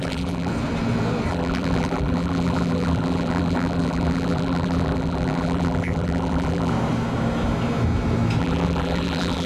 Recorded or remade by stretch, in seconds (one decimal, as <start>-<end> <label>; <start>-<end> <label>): 0.0-0.5 remade; 0.5-1.3 recorded; 1.3-6.7 remade; 6.7-8.4 recorded; 8.4-9.5 remade